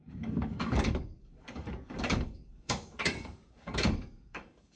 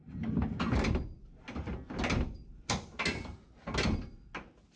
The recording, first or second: second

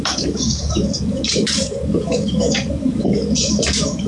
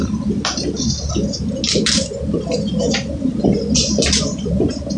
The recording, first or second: second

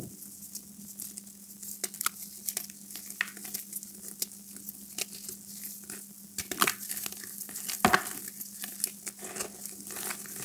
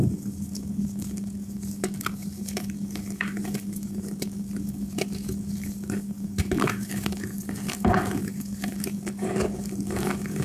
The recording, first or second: first